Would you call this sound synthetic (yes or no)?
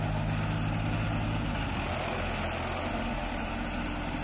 no